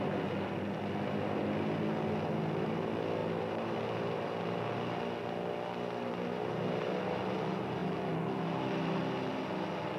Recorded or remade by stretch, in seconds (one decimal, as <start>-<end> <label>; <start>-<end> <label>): 0.0-10.0 recorded